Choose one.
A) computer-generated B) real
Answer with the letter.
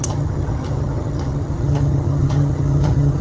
A